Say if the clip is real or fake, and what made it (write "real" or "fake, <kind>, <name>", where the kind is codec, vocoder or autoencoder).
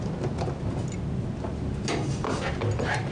real